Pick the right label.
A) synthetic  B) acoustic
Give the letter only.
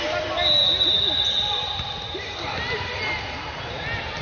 B